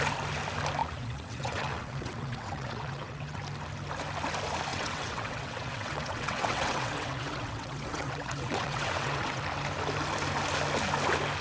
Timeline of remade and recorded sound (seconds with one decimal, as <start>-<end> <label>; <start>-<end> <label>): 0.0-0.8 recorded; 0.8-3.4 remade; 3.4-4.7 recorded; 4.7-9.4 remade; 9.4-11.4 recorded